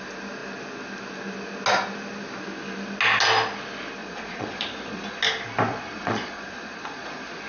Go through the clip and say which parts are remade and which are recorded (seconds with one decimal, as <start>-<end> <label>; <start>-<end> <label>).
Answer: 0.0-4.0 recorded; 4.0-5.2 remade; 5.2-5.7 recorded; 5.7-7.5 remade